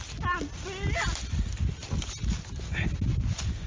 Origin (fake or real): real